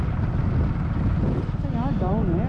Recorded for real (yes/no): yes